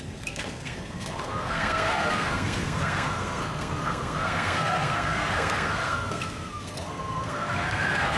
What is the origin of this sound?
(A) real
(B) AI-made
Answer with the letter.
B